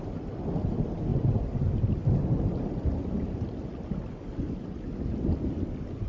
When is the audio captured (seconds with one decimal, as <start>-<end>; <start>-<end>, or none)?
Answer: 0.0-6.1